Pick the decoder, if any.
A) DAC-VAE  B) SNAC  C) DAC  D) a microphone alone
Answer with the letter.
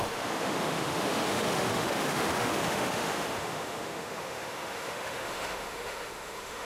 A